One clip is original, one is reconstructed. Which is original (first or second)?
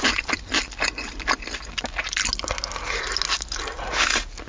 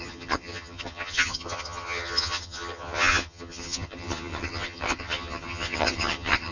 first